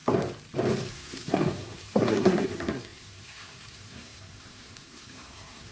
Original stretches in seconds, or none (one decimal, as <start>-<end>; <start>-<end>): 0.0-0.9